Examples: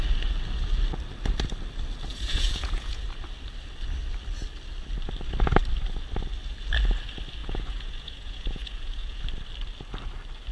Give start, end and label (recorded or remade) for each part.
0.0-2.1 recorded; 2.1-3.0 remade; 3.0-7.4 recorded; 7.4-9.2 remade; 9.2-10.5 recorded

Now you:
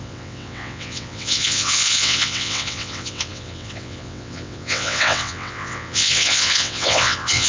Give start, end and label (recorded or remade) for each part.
0.0-7.5 remade